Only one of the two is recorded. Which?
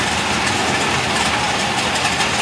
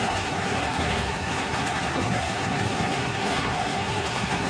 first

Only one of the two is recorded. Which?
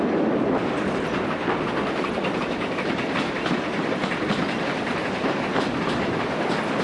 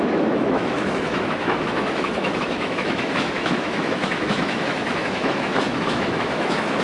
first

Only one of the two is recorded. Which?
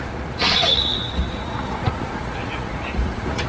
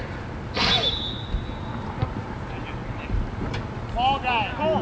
second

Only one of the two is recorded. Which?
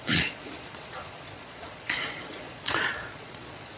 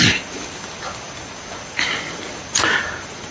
second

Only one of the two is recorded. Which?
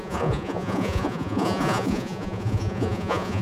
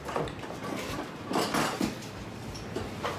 second